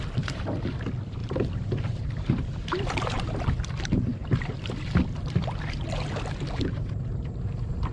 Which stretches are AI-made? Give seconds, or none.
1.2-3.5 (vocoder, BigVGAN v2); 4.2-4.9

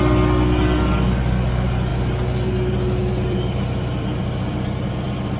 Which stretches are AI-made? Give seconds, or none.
1.9-5.4 (vocoder, BigVGAN v2)

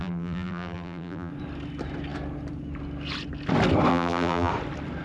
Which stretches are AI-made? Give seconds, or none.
0.0-1.3 (vocoder, BigVGAN v2); 3.9-4.5

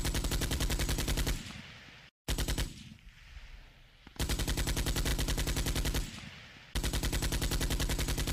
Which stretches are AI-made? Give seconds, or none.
0.4-1.6 (vocoder, BigVGAN v2); 2.9-4.4

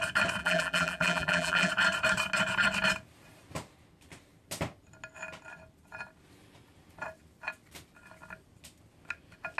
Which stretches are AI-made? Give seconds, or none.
0.4-1.7 (vocoder, BigVGAN v2)

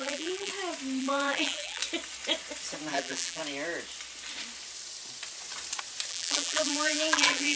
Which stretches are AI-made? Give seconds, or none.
0.0-0.5 (vocoder, BigVGAN v2); 1.0-1.8; 2.9-3.4; 6.1-7.6

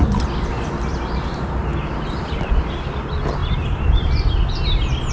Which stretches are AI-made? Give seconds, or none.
0.9-2.5 (vocoder, BigVGAN v2)